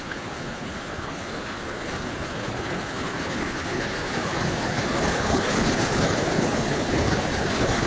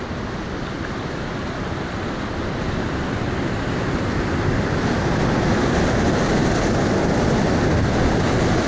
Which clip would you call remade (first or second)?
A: first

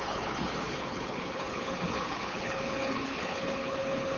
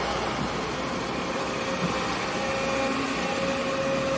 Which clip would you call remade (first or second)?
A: first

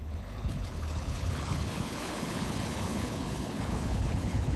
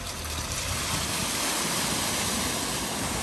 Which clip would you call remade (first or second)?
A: first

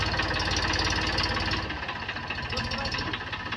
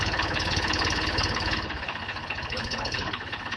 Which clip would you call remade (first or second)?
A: second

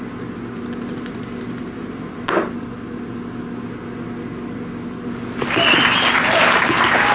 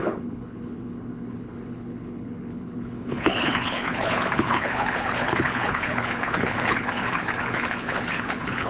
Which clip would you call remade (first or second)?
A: second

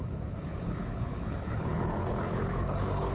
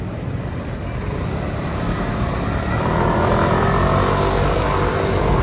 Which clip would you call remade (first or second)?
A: first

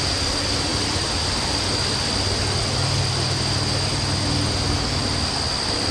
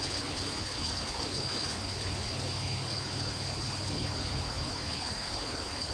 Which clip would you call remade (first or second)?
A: second